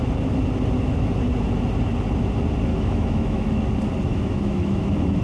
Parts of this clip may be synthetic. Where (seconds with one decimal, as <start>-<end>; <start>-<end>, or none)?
2.7-3.6; 4.1-5.2